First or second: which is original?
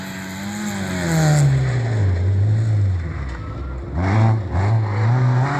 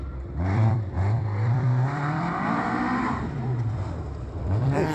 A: first